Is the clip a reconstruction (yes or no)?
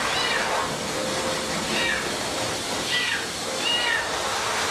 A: no